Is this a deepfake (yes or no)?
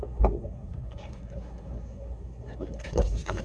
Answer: yes